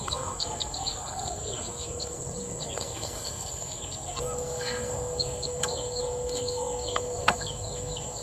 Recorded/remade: remade